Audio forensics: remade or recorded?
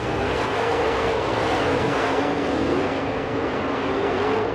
remade